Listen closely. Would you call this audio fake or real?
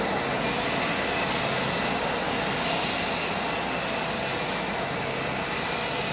real